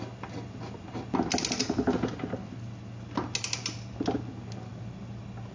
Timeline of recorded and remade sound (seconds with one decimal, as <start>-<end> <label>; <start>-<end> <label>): 0.0-5.5 recorded